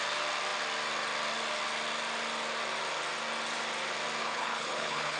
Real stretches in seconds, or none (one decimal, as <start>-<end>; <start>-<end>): 0.0-4.2